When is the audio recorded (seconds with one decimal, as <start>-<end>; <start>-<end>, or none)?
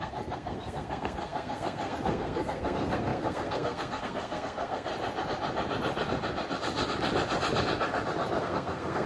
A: 4.9-8.4